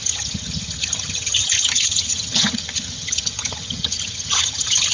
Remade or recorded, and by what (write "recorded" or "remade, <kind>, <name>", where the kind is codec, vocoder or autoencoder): remade, vocoder, HiFi-GAN